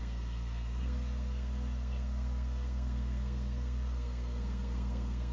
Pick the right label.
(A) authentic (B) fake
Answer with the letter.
B